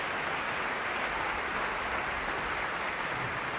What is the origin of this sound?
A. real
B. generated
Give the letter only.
A